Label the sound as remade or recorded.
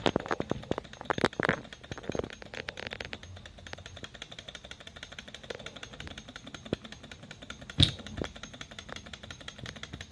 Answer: recorded